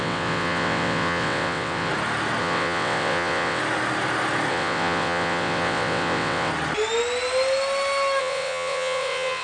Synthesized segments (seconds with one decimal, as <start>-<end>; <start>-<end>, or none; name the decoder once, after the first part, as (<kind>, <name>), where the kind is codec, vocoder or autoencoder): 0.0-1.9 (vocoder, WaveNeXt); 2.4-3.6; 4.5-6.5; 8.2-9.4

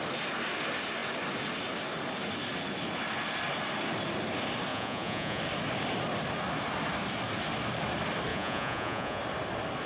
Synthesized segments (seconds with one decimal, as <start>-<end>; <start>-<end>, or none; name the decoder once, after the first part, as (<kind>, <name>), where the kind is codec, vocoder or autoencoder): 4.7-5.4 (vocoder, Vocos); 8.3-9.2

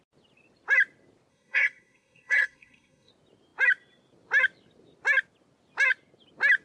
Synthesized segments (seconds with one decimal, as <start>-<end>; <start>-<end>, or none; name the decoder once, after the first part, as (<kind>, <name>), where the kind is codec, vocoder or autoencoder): 1.3-3.1 (codec, SNAC)